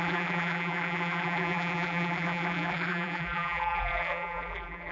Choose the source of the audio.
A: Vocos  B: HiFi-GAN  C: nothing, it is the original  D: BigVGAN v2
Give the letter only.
D